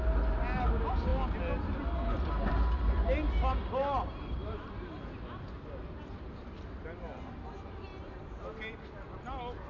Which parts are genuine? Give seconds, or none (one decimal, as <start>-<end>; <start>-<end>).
0.0-4.4; 5.0-9.7